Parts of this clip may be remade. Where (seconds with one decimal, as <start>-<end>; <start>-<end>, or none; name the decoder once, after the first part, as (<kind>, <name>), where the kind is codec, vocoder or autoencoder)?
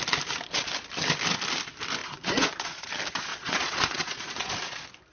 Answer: 2.0-2.9 (vocoder, Vocos); 3.3-4.5